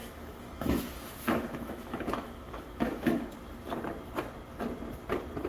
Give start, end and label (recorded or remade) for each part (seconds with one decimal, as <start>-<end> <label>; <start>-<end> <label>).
0.0-3.3 remade; 3.3-5.5 recorded

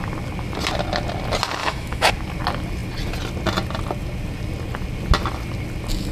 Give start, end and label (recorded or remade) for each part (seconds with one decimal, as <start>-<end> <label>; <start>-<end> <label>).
0.0-1.6 recorded; 1.6-2.1 remade; 2.1-6.1 recorded

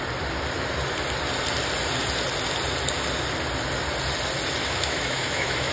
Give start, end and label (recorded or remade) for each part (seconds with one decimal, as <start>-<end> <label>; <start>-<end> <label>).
0.0-4.6 recorded; 4.6-5.7 remade

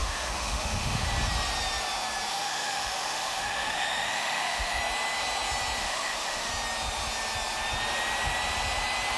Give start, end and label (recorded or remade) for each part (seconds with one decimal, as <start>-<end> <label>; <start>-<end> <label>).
0.0-1.1 remade; 1.1-2.3 recorded; 2.3-4.8 remade; 4.8-5.8 recorded; 5.8-6.5 remade; 6.5-9.2 recorded

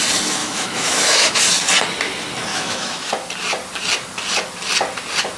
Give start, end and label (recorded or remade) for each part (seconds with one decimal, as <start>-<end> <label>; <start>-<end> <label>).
0.0-0.4 recorded; 0.4-1.4 remade; 1.4-2.5 recorded; 2.5-3.1 remade; 3.1-5.4 recorded

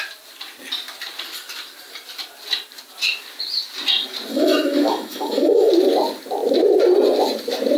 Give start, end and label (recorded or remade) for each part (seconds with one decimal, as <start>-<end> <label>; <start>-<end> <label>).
0.0-4.3 recorded; 4.3-5.7 remade; 5.7-7.8 recorded

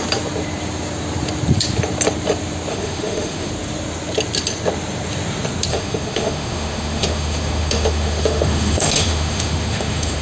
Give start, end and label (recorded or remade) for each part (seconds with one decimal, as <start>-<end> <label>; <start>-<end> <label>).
0.0-2.7 recorded; 2.7-3.5 remade; 3.5-5.7 recorded; 5.7-10.2 remade